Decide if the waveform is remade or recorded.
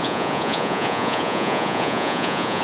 remade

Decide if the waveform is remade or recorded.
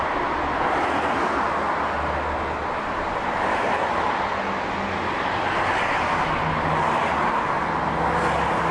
recorded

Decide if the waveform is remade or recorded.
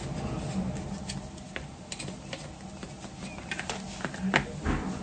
recorded